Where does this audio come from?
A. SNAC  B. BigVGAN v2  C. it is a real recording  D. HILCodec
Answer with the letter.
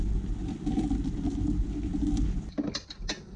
C